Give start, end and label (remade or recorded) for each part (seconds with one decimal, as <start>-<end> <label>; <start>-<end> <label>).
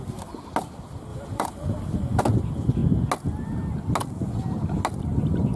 0.0-1.1 recorded; 1.1-2.2 remade; 2.2-5.6 recorded